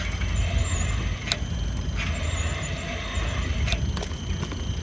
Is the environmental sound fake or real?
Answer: real